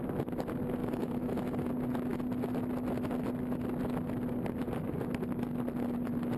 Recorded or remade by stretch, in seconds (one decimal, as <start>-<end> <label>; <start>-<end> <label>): 0.0-0.8 recorded; 0.8-1.7 remade; 1.7-6.4 recorded